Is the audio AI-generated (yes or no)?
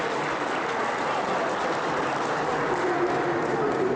no